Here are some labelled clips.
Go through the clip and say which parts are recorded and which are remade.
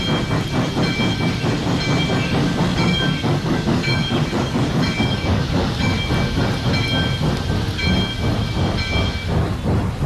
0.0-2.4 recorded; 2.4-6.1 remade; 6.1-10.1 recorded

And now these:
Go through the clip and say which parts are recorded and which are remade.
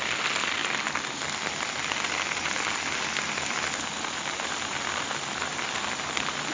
0.0-6.5 recorded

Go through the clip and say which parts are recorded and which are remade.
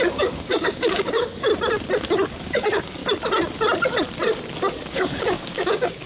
0.0-1.5 remade; 1.5-2.4 recorded; 2.4-3.0 remade; 3.0-4.9 recorded; 4.9-6.1 remade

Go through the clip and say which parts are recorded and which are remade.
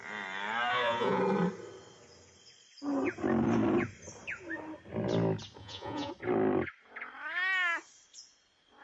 0.0-0.7 recorded; 0.7-1.2 remade; 1.2-5.6 recorded; 5.6-6.1 remade; 6.1-8.8 recorded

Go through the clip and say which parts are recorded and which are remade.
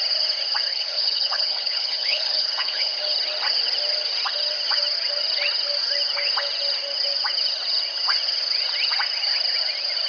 0.0-0.7 recorded; 0.7-3.0 remade; 3.0-10.1 recorded